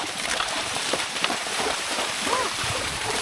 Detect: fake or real fake